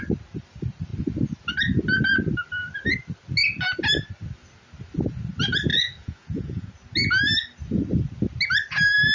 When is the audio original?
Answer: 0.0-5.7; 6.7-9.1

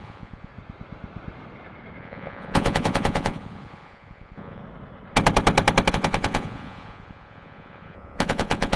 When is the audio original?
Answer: 0.5-2.0; 4.6-5.9